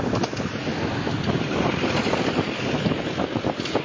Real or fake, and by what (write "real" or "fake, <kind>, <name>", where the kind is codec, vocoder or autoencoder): real